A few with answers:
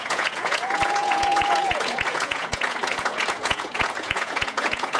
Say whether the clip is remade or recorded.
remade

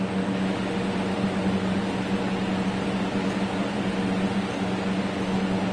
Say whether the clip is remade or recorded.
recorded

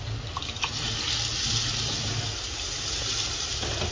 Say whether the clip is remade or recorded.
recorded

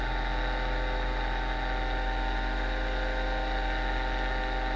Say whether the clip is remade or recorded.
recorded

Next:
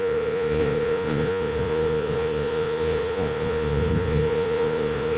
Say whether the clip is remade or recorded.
remade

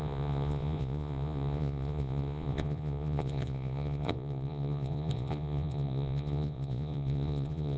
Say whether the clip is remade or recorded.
remade